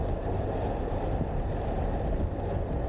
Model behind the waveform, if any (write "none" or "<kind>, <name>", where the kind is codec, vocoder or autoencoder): none